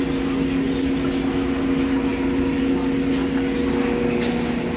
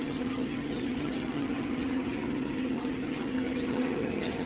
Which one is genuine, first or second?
first